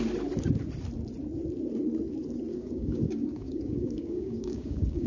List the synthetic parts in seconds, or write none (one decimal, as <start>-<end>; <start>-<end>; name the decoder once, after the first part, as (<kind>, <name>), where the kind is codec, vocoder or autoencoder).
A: 2.5-5.1 (codec, DAC)